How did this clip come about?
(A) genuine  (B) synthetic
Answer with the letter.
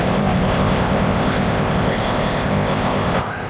B